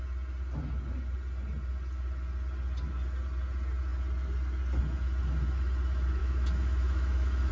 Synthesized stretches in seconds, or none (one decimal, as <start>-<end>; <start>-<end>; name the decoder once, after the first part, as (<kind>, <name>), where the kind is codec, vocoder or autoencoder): 6.2-7.5 (autoencoder, DAC-VAE)